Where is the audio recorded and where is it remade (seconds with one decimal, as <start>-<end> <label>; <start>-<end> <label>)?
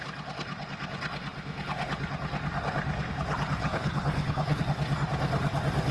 0.0-3.6 recorded; 3.6-4.6 remade; 4.6-5.9 recorded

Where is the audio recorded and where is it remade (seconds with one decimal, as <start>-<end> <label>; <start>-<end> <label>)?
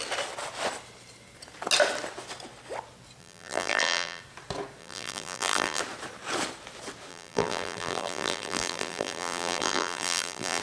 0.0-3.2 recorded; 3.2-4.2 remade; 4.2-4.8 recorded; 4.8-5.8 remade; 5.8-7.1 recorded; 7.1-10.6 remade